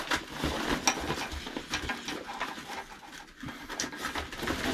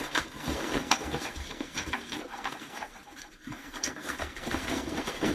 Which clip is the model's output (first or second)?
second